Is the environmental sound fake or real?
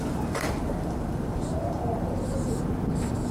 fake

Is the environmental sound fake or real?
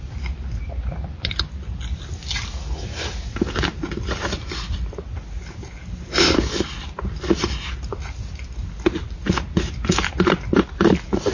real